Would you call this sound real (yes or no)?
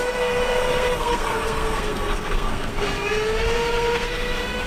no